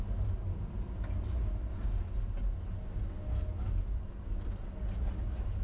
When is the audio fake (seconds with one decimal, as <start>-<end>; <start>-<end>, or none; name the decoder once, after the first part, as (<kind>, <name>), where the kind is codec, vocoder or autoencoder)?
3.5-4.1 (vocoder, BigVGAN v2)